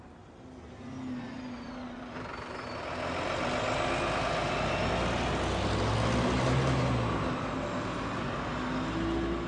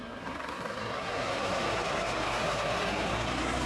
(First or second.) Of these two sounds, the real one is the first